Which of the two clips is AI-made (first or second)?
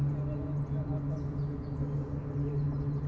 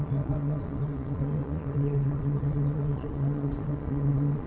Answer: second